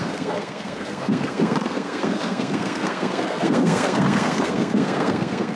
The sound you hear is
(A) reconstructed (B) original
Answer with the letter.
A